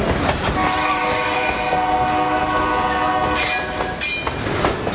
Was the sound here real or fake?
real